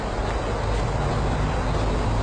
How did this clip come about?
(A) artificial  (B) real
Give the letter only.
B